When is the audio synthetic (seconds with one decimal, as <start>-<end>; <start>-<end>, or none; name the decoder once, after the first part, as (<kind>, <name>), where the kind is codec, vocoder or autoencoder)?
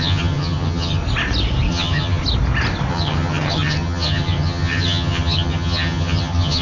0.0-1.0 (vocoder, HiFi-GAN); 1.7-2.2; 2.9-6.6